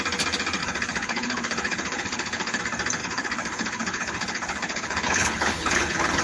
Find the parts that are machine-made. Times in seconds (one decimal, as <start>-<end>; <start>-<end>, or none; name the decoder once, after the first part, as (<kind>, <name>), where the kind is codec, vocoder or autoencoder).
0.6-2.6 (codec, HILCodec); 3.0-6.2